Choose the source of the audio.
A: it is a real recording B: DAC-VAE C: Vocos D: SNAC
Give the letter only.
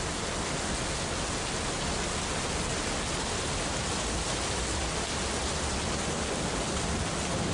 A